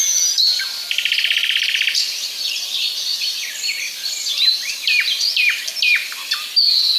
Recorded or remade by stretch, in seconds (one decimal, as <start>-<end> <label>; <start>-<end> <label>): 0.0-1.4 recorded; 1.4-5.6 remade; 5.6-7.0 recorded